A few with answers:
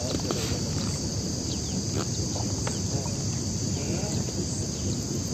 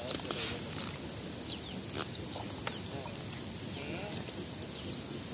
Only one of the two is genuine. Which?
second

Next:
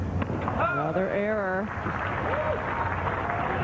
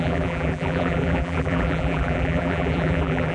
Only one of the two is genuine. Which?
first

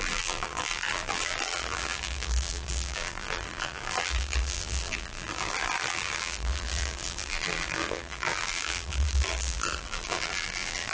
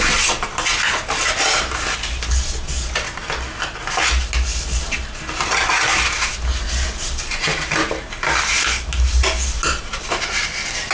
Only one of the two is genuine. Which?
second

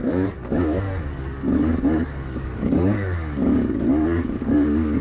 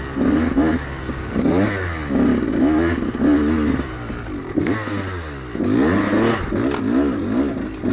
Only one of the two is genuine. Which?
second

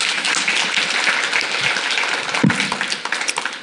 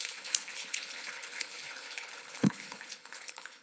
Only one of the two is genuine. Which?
first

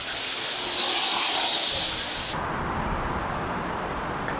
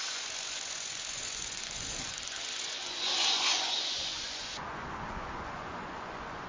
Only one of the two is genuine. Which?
first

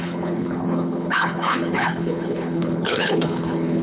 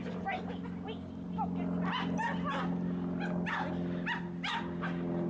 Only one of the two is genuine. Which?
second